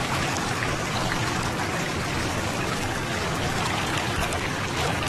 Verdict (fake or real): fake